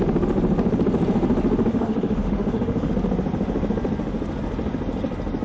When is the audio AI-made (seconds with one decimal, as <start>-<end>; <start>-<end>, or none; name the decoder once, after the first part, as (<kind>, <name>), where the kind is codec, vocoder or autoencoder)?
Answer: 1.7-2.9 (autoencoder, DAC-VAE)